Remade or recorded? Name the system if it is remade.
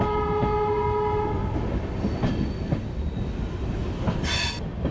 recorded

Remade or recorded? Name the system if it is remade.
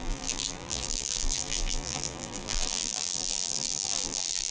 remade, vocoder, BigVGAN v2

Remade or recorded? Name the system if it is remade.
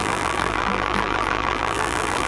remade, vocoder, BigVGAN v2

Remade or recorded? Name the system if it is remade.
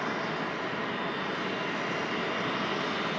recorded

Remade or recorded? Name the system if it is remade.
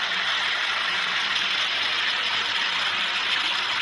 recorded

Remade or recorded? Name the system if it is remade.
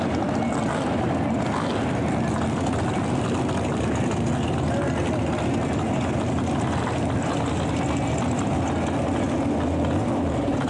recorded